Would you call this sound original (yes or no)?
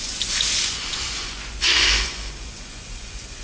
no